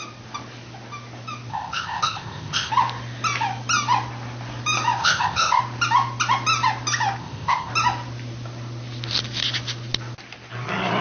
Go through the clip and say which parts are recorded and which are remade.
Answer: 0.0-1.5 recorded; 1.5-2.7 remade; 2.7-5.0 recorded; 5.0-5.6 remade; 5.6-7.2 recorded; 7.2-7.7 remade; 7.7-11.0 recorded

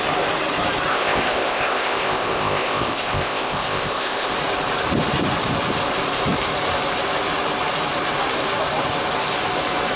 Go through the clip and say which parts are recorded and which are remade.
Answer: 0.0-0.9 recorded; 0.9-4.3 remade; 4.3-10.0 recorded

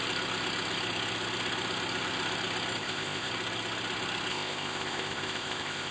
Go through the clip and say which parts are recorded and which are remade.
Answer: 0.0-2.8 recorded; 2.8-3.3 remade; 3.3-4.3 recorded; 4.3-5.9 remade

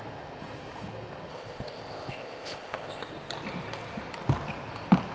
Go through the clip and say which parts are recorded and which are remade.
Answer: 0.0-1.3 recorded; 1.3-3.1 remade; 3.1-5.1 recorded